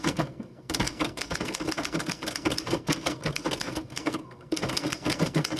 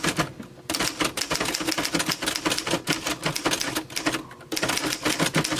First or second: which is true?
second